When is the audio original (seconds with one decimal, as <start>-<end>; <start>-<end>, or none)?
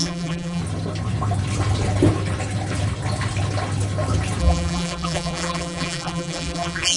0.6-4.4